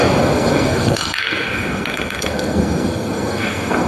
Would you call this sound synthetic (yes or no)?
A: yes